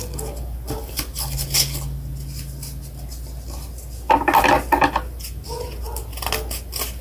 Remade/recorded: recorded